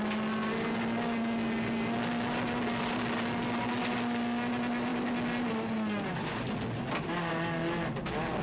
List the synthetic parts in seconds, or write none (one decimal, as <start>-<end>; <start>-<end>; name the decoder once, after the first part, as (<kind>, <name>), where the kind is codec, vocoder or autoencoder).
none